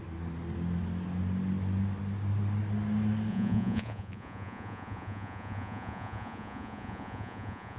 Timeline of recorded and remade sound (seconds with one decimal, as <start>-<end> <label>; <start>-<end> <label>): 0.0-3.3 recorded; 3.3-7.8 remade